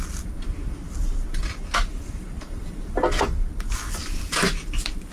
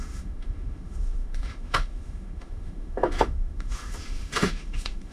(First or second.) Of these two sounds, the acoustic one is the first